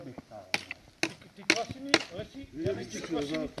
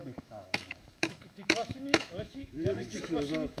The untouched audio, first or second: first